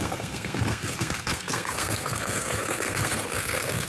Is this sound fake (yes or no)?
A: yes